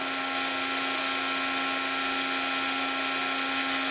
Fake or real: real